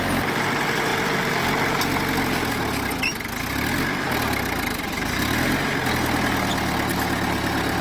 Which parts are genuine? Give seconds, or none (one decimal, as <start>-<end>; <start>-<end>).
0.0-7.8